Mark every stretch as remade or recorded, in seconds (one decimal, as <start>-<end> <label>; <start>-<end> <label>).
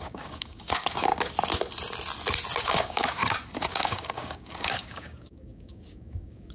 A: 0.0-1.1 remade; 1.1-2.6 recorded; 2.6-3.2 remade; 3.2-3.7 recorded; 3.7-6.5 remade